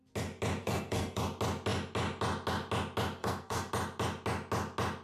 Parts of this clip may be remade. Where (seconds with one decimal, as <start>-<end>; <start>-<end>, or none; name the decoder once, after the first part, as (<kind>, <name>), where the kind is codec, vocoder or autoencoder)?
0.6-1.2 (codec, SNAC); 3.2-3.7

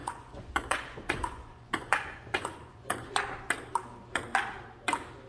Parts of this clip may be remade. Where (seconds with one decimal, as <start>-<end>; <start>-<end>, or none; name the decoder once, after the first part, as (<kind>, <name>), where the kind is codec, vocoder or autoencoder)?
0.0-3.2 (vocoder, Vocos)